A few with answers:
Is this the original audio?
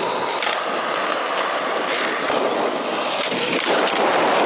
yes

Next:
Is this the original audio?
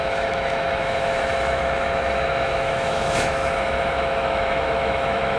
no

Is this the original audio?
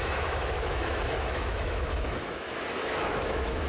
no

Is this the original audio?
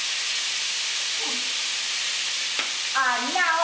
yes